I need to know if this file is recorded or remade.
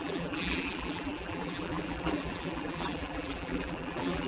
remade